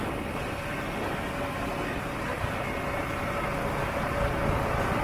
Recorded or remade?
recorded